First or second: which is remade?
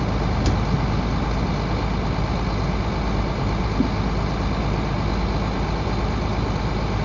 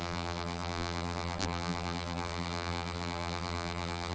second